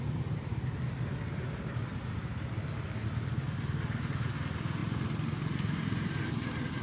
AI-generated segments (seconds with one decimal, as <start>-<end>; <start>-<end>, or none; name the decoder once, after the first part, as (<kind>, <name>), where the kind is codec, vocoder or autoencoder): none